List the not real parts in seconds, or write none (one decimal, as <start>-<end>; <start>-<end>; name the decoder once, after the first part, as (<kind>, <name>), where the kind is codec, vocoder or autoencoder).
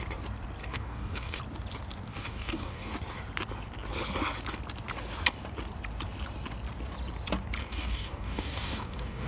0.6-1.4 (codec, DAC); 2.1-2.9; 7.6-9.3